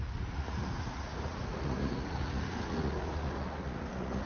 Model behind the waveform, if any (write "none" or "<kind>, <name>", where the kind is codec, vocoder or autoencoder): vocoder, Vocos